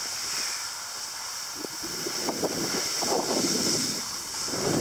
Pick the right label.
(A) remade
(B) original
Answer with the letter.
B